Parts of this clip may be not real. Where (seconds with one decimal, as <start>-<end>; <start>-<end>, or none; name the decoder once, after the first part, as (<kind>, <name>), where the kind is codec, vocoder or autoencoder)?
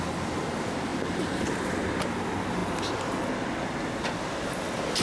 0.9-1.9 (vocoder, BigVGAN v2)